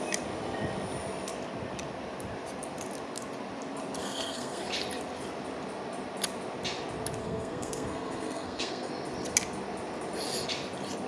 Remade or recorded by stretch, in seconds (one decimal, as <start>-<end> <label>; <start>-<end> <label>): 0.0-4.0 recorded; 4.0-4.6 remade; 4.6-7.2 recorded; 7.2-8.9 remade; 8.9-11.1 recorded